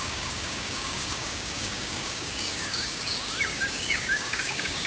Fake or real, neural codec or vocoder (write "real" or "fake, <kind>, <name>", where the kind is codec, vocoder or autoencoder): fake, codec, DAC